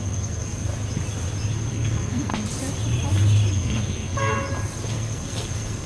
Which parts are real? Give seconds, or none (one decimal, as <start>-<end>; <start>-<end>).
0.7-1.7; 2.3-3.5; 4.3-4.9